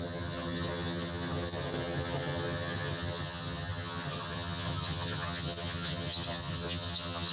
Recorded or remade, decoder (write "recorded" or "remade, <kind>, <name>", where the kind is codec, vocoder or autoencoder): remade, vocoder, HiFi-GAN